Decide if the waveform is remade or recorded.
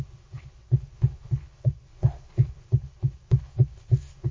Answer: remade